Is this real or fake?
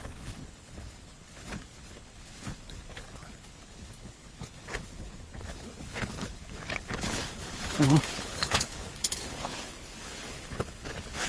fake